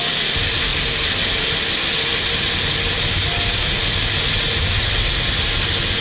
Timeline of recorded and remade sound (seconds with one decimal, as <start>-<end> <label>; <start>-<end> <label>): 0.0-6.0 recorded

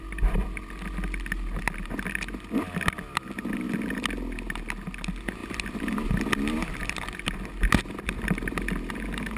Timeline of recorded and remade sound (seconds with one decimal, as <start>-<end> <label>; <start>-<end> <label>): 0.0-9.4 recorded

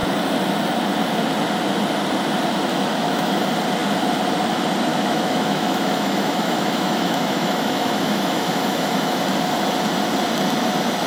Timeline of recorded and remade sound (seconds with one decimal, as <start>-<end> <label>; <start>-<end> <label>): 0.0-2.7 recorded; 2.7-3.4 remade; 3.4-4.9 recorded; 4.9-9.2 remade; 9.2-11.1 recorded

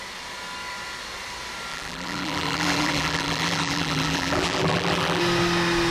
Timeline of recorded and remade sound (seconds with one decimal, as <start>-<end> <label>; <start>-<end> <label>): 0.0-1.7 recorded; 1.7-5.2 remade; 5.2-5.9 recorded

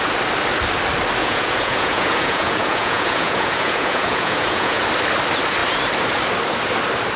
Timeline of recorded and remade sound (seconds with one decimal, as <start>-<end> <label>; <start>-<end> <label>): 0.0-1.2 recorded; 1.2-4.8 remade; 4.8-7.2 recorded

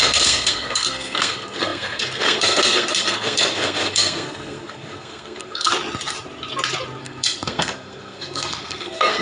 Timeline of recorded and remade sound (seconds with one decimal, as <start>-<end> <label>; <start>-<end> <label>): 0.0-5.7 remade; 5.7-7.0 recorded; 7.0-9.2 remade

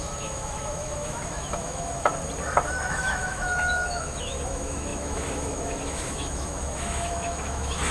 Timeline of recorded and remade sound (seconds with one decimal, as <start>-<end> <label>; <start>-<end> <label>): 0.0-2.1 remade; 2.1-2.9 recorded; 2.9-7.9 remade

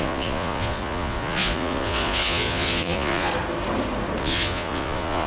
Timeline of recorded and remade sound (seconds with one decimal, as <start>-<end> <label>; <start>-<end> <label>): 0.0-3.3 remade; 3.3-4.2 recorded; 4.2-5.3 remade